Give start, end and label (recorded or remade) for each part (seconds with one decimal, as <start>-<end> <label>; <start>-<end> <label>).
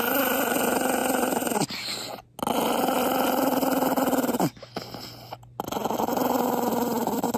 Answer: 0.0-7.4 recorded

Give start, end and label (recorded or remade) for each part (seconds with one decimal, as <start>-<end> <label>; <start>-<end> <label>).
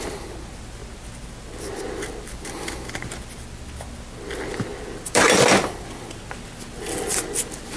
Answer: 0.0-7.8 recorded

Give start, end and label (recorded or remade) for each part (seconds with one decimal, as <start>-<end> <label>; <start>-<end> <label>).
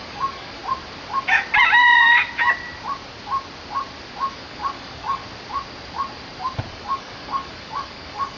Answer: 0.0-0.6 remade; 0.6-4.3 recorded; 4.3-5.2 remade; 5.2-6.7 recorded; 6.7-8.4 remade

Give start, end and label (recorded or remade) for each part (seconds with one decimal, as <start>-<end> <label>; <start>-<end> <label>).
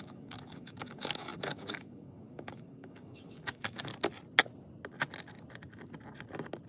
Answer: 0.0-3.9 remade; 3.9-6.7 recorded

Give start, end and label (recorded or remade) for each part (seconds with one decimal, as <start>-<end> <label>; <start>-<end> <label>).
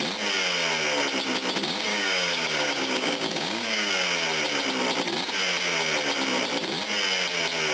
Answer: 0.0-1.9 recorded; 1.9-3.9 remade; 3.9-7.7 recorded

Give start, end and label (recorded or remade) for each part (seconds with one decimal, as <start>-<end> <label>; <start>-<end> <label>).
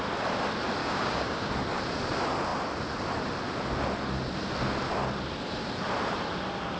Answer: 0.0-0.8 recorded; 0.8-1.5 remade; 1.5-6.8 recorded